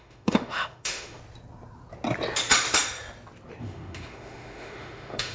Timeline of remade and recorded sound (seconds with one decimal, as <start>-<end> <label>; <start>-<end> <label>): 0.0-1.2 remade; 1.2-3.6 recorded; 3.6-5.3 remade

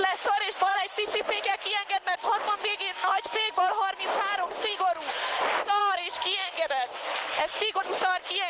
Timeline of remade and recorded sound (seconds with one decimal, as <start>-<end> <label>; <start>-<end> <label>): 0.0-0.7 recorded; 0.7-1.4 remade; 1.4-3.0 recorded; 3.0-3.6 remade; 3.6-5.8 recorded; 5.8-7.8 remade; 7.8-8.5 recorded

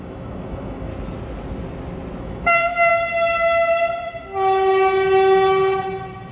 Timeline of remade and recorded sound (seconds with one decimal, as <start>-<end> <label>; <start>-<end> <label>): 0.0-0.9 remade; 0.9-2.2 recorded; 2.2-2.9 remade; 2.9-6.3 recorded

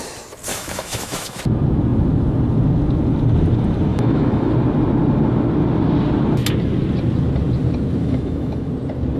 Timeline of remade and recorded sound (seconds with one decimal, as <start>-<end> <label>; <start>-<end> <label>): 0.0-0.5 recorded; 0.5-1.4 remade; 1.4-3.9 recorded; 3.9-4.5 remade; 4.5-8.0 recorded; 8.0-8.7 remade; 8.7-9.2 recorded